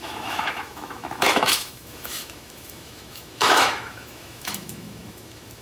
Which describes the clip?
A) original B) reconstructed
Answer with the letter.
B